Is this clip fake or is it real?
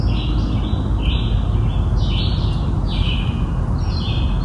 real